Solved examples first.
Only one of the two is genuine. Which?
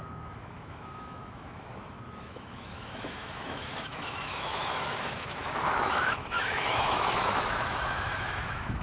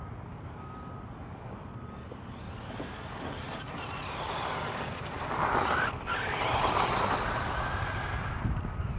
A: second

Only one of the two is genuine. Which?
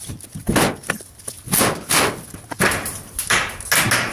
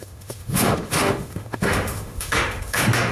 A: first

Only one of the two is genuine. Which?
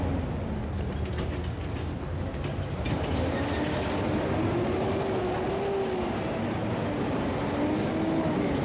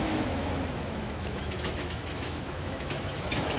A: first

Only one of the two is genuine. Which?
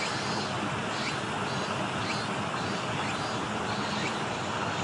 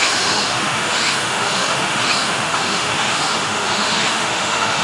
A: first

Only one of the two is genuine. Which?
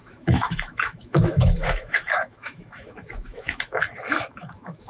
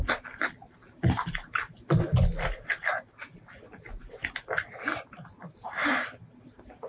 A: second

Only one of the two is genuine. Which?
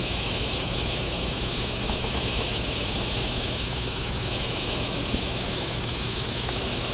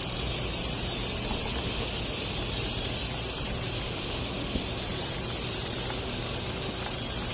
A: second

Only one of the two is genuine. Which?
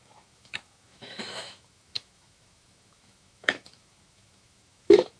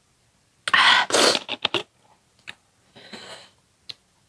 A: second